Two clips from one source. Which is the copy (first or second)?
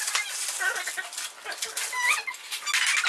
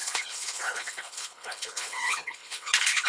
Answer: second